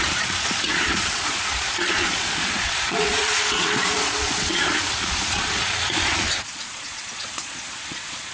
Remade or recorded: remade